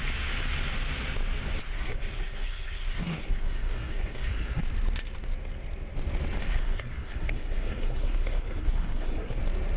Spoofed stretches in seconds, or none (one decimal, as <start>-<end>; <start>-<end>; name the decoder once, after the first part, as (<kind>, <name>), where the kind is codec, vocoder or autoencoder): 1.6-4.6 (codec, SNAC); 6.4-9.4